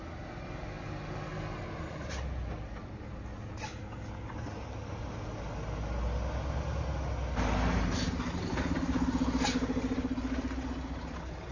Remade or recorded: recorded